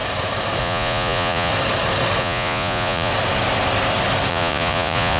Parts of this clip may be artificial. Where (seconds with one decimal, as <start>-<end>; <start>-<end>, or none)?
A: 0.6-1.5; 2.2-3.1; 4.3-5.2